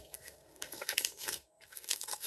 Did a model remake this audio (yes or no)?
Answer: yes